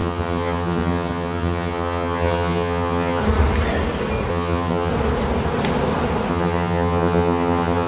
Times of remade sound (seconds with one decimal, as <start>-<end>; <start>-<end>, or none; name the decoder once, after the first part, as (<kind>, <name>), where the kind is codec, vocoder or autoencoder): 0.0-3.2 (vocoder, HiFi-GAN); 4.3-4.9; 6.3-7.9